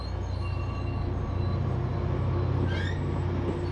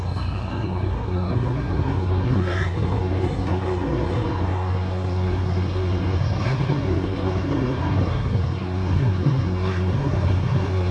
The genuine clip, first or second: first